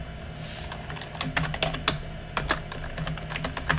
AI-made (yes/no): no